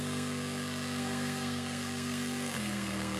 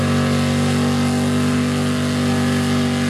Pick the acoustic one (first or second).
second